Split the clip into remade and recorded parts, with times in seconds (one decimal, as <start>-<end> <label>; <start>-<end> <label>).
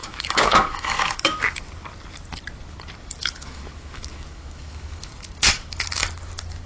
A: 0.0-1.6 remade; 1.6-3.2 recorded; 3.2-5.1 remade; 5.1-6.7 recorded